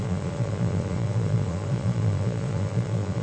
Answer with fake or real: fake